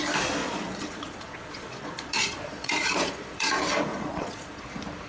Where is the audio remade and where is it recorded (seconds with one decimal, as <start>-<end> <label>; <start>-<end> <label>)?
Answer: 0.0-0.4 recorded; 0.4-3.5 remade; 3.5-3.9 recorded; 3.9-4.6 remade; 4.6-5.1 recorded